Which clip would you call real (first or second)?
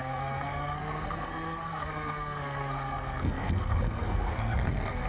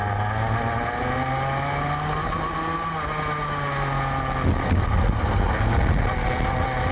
second